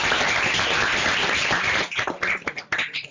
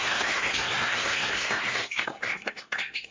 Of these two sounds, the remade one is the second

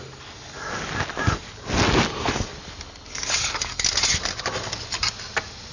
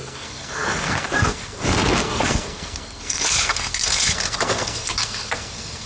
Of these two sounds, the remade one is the second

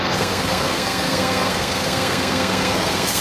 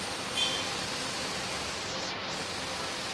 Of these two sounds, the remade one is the first